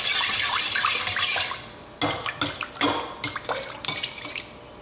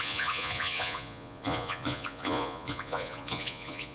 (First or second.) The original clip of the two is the first